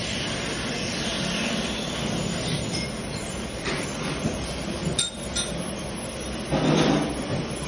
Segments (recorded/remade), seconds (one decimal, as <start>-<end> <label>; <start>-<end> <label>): 0.0-3.0 recorded; 3.0-5.0 remade; 5.0-7.7 recorded